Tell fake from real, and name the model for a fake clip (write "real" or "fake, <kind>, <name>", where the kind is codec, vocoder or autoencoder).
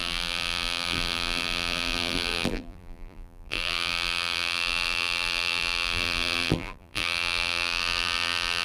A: fake, vocoder, BigVGAN v2